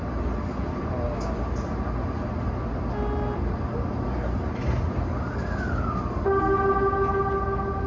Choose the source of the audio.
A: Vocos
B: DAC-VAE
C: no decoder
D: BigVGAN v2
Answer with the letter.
C